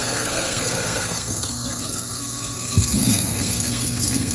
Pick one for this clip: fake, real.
fake